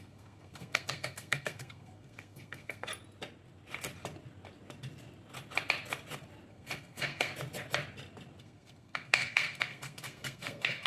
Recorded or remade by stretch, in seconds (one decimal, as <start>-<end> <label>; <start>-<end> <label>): 0.0-2.9 remade; 2.9-6.5 recorded; 6.5-7.3 remade; 7.3-8.4 recorded; 8.4-10.9 remade